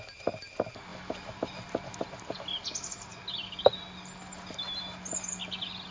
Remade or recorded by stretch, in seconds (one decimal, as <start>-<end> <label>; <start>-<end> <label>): 0.0-5.9 recorded

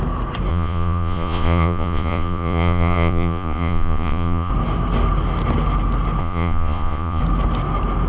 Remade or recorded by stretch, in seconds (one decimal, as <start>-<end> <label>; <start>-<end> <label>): 0.0-0.5 recorded; 0.5-4.5 remade; 4.5-6.2 recorded; 6.2-7.2 remade; 7.2-8.1 recorded

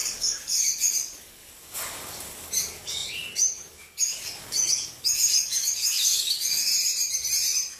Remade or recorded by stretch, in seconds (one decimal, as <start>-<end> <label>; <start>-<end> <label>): 0.0-6.7 remade; 6.7-7.8 recorded

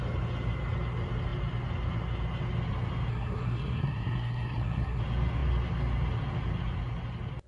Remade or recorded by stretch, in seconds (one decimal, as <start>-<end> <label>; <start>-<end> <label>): 0.0-3.1 recorded; 3.1-5.0 remade; 5.0-7.5 recorded

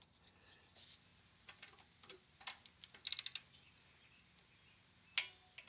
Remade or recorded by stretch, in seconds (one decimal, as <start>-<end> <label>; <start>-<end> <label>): 0.0-5.7 recorded

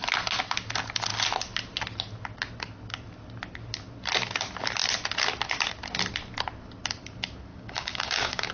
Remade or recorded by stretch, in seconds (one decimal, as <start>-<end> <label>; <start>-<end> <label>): 0.0-7.5 recorded; 7.5-8.5 remade

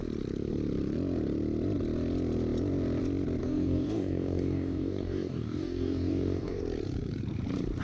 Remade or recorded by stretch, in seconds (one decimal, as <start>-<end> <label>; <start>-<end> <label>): 0.0-3.4 recorded; 3.4-6.6 remade; 6.6-7.8 recorded

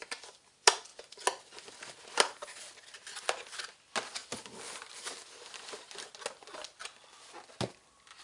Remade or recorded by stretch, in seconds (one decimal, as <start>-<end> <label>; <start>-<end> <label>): 0.0-8.2 recorded